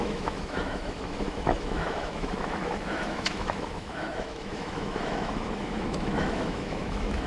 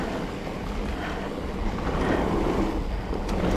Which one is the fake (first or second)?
first